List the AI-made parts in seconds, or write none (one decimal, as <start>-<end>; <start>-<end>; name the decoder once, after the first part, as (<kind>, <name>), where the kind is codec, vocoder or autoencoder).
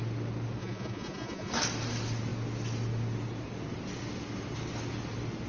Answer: 0.6-1.5 (vocoder, Vocos)